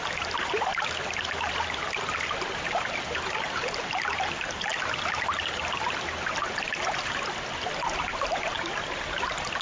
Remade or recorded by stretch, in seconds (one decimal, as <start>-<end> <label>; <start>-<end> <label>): 0.0-9.6 recorded